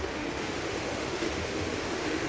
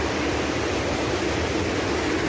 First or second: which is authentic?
second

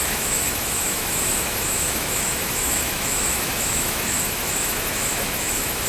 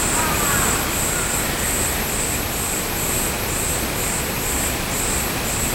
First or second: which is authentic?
second